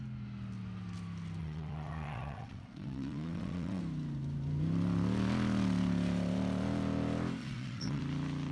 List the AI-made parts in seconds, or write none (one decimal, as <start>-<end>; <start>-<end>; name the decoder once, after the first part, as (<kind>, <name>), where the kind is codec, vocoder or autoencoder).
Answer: 1.4-3.8 (vocoder, WaveNeXt); 7.4-8.0